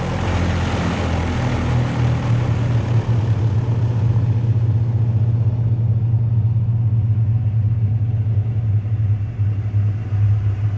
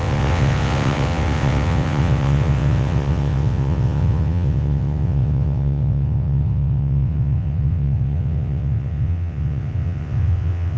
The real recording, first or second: first